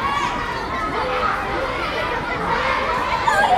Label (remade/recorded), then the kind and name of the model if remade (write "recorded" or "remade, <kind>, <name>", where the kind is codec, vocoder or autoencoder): recorded